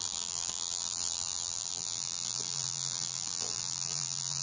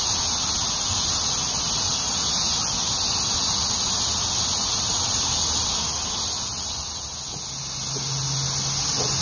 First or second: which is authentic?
second